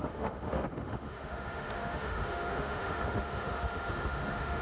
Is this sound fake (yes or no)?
yes